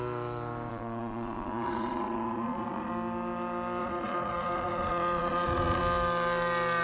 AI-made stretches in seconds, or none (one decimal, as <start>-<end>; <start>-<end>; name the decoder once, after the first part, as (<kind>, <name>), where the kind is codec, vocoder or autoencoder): 0.7-2.9 (vocoder, Vocos); 3.8-5.8